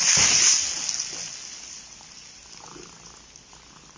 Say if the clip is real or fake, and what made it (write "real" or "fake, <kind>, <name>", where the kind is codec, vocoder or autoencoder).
real